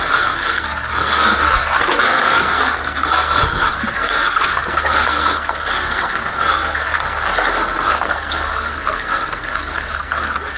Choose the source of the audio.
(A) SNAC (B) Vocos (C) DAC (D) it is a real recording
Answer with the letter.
A